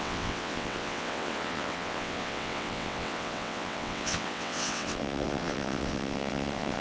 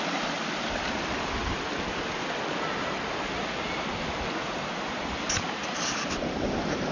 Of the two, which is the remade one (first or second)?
first